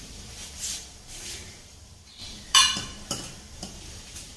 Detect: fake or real fake